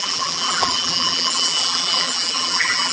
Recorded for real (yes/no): no